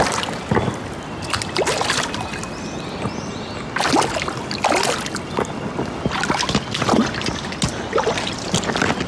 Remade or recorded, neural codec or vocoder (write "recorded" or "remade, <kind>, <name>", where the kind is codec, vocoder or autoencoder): recorded